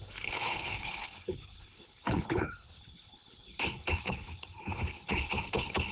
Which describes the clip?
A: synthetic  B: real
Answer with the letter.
A